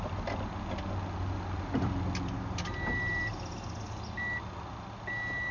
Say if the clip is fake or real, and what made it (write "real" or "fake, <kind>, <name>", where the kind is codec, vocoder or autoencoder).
real